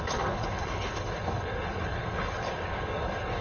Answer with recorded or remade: remade